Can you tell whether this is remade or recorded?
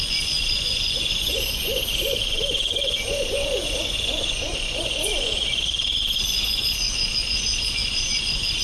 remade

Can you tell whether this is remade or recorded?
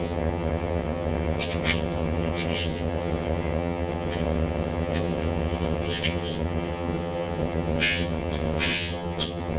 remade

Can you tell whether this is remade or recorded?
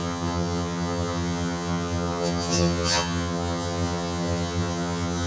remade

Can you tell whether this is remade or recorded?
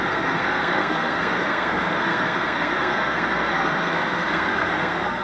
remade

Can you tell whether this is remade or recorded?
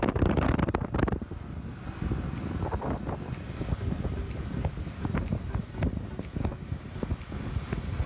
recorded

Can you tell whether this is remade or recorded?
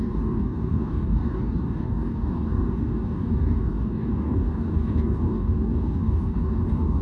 remade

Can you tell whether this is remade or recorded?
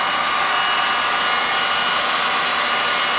recorded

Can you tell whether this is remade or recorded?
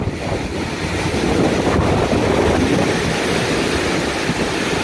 recorded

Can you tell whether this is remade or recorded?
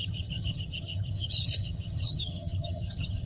remade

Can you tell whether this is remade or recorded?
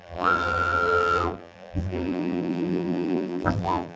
remade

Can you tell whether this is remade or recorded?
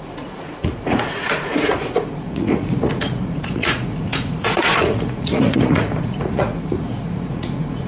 remade